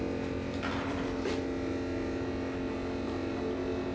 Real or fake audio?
real